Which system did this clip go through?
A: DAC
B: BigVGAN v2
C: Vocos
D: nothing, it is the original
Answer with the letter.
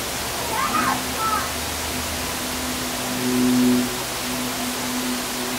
D